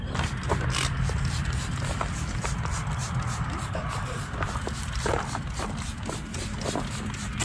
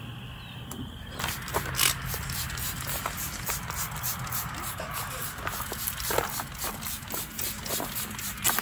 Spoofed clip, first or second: first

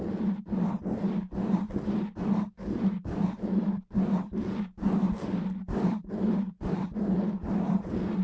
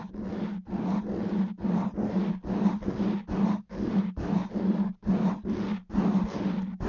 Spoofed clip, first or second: first